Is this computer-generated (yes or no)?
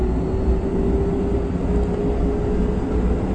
no